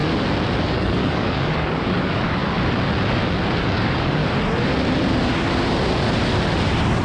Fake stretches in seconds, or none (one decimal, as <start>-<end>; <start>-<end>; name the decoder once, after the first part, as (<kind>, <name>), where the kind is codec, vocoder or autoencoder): 0.6-2.4 (codec, DAC); 3.6-4.2